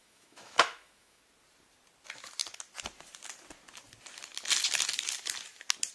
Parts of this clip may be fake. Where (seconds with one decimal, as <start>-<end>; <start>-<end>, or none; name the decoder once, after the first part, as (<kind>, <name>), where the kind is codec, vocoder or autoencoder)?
0.0-1.2 (autoencoder, DAC-VAE)